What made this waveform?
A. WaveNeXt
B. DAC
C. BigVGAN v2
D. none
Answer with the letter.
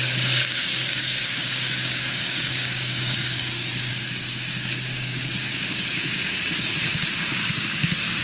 B